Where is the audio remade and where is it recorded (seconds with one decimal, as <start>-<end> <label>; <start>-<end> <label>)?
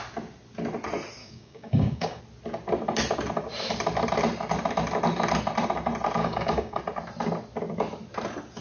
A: 0.0-1.2 recorded; 1.2-2.2 remade; 2.2-6.2 recorded; 6.2-6.8 remade; 6.8-8.6 recorded